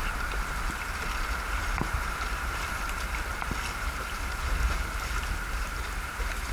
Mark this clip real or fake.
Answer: fake